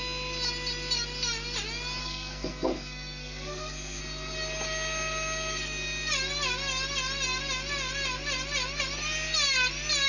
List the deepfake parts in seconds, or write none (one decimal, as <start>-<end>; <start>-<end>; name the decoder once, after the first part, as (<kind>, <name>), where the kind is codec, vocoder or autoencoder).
2.0-4.0 (codec, SNAC)